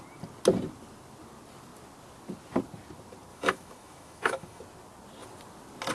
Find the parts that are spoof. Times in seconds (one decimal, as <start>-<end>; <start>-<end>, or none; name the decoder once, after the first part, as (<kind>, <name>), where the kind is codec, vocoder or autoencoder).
3.3-4.6 (autoencoder, DAC-VAE)